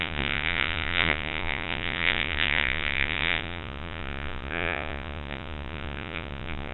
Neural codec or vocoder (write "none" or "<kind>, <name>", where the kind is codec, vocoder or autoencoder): vocoder, Vocos